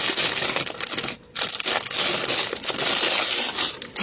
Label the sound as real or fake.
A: real